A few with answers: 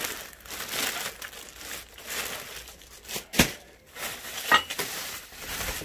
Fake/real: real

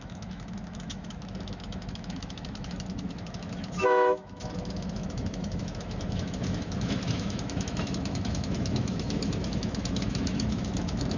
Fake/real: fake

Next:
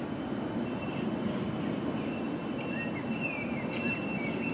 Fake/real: real